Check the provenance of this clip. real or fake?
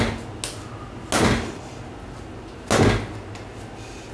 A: real